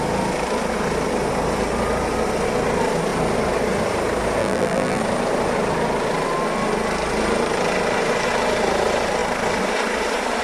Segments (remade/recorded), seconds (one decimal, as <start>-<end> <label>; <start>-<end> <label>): 0.0-4.4 recorded; 4.4-5.0 remade; 5.0-10.4 recorded